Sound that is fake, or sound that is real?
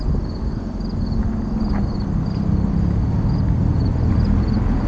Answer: real